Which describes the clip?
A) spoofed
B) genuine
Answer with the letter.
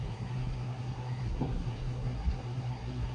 A